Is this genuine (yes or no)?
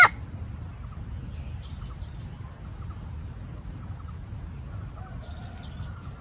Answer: yes